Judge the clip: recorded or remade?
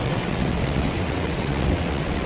remade